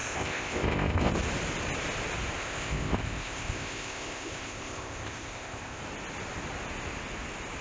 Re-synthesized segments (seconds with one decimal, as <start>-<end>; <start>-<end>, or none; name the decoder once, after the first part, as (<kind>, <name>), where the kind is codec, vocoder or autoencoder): 0.0-1.1 (codec, ZipCodec); 2.4-5.8